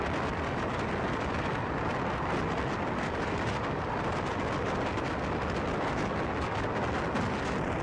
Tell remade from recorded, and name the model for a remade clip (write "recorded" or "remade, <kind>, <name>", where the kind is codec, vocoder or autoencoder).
recorded